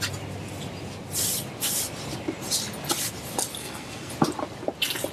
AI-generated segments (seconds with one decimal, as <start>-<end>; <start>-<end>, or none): 3.6-4.1